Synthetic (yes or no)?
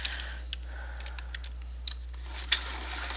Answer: no